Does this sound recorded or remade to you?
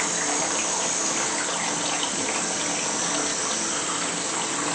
recorded